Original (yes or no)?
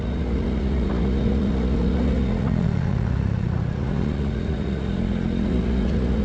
no